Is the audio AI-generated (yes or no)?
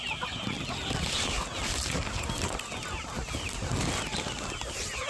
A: no